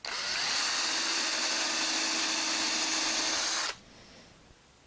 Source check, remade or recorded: recorded